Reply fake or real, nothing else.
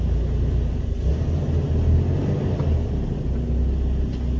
real